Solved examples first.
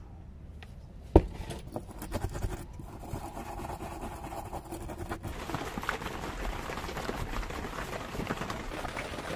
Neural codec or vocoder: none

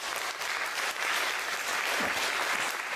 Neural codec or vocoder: none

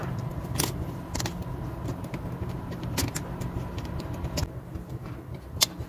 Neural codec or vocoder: none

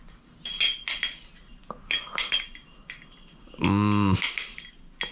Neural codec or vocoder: none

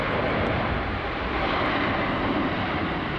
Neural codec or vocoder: vocoder, BigVGAN v2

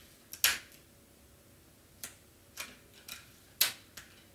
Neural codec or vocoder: none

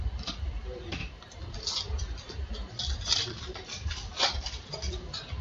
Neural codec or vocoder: vocoder, BigVGAN v2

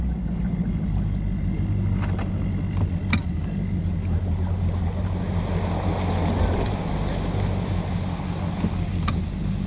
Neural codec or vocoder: none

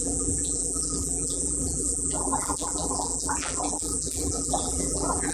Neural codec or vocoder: vocoder, BigVGAN v2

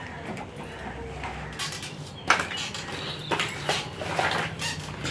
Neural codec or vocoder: none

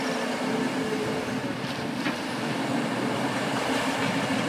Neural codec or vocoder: vocoder, BigVGAN v2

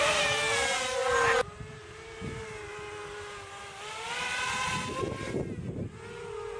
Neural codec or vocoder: none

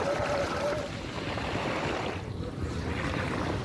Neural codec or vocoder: none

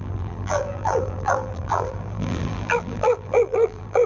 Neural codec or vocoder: vocoder, BigVGAN v2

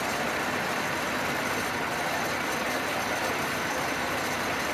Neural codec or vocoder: none